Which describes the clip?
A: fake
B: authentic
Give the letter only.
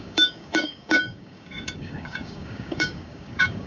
A